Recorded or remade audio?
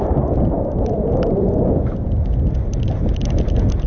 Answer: recorded